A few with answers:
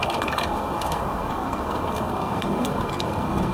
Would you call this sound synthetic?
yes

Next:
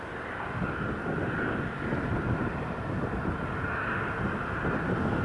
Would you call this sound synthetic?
no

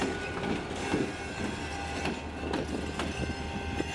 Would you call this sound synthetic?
no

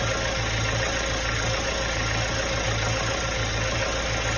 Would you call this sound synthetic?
no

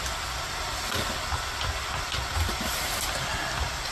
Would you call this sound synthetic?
no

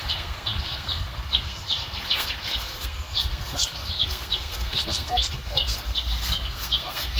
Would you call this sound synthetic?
yes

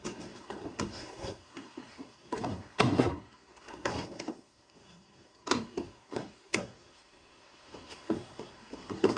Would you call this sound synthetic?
yes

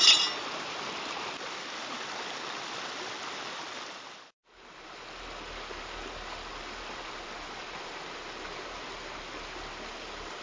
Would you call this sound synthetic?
no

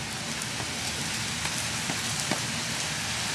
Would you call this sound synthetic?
no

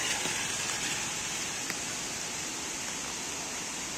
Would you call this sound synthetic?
no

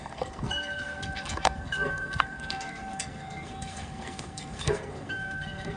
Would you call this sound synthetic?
yes